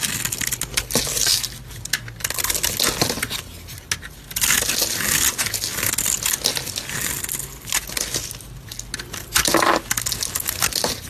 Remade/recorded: recorded